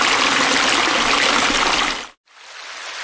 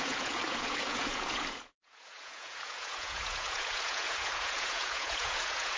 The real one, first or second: first